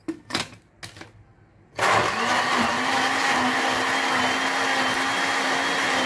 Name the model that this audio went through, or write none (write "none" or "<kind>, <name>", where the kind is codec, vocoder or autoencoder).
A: none